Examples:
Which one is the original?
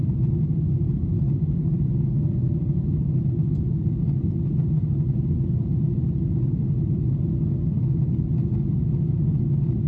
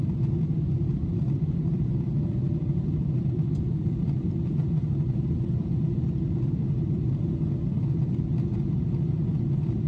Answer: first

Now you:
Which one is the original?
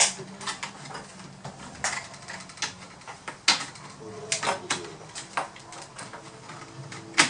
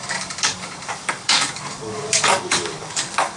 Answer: first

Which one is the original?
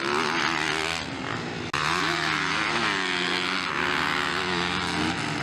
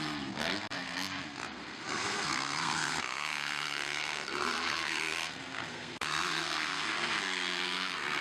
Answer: first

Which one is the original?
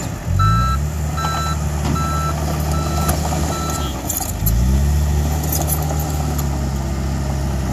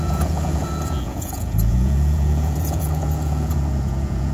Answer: first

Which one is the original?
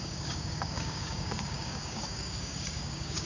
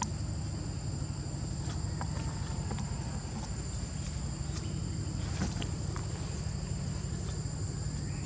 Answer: second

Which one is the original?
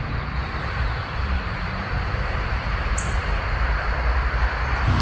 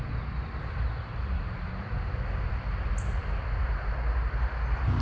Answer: second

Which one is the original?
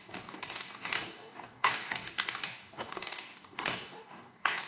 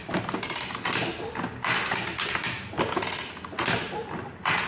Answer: second